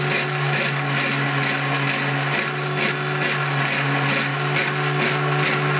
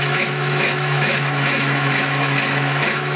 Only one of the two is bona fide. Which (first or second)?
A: first